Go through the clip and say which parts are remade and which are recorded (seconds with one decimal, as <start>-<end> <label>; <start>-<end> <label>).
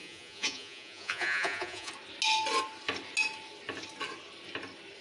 0.0-1.9 remade; 1.9-5.0 recorded